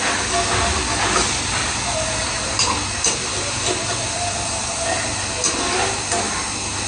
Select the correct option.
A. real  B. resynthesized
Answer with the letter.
A